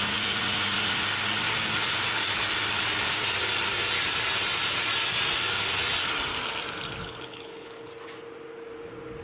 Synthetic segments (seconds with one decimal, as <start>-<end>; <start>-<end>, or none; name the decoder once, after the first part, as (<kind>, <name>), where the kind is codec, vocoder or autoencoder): 7.0-7.9 (codec, HILCodec)